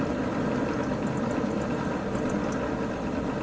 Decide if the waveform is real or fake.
real